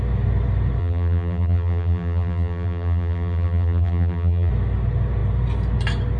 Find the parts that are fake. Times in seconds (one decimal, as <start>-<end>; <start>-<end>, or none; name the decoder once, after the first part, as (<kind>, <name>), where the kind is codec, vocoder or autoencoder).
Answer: 0.8-4.5 (vocoder, BigVGAN v2)